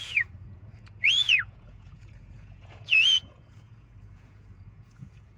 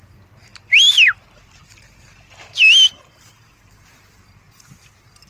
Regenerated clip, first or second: first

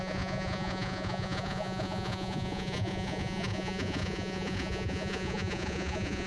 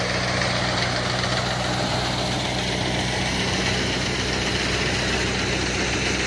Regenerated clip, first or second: first